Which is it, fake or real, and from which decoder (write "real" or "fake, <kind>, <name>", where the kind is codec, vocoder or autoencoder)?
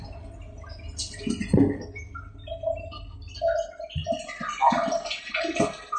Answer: real